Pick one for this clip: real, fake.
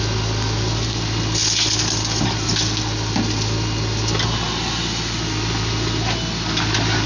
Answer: real